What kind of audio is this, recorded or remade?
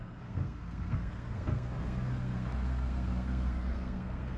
remade